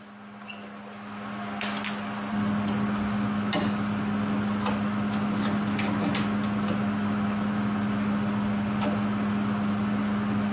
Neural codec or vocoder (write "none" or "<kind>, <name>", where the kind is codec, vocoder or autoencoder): none